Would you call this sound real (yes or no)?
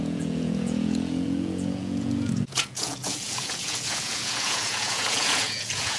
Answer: no